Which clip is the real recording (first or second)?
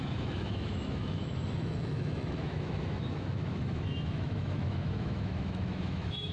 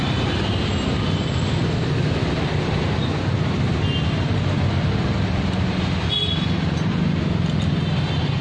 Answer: second